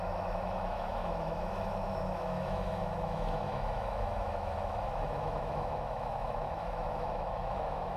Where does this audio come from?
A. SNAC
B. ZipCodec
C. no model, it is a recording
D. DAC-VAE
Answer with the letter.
D